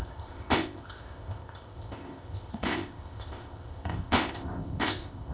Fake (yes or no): yes